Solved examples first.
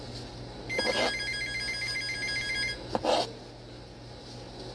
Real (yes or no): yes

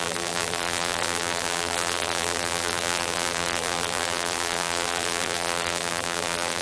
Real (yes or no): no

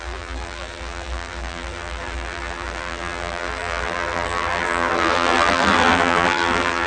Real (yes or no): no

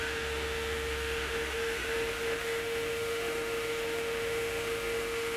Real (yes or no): no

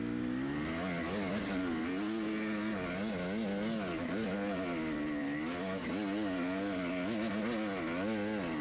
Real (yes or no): yes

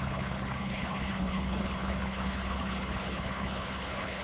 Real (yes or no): no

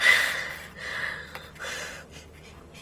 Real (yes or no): yes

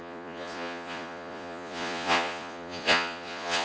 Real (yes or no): no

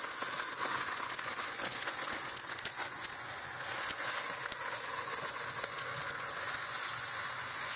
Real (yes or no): no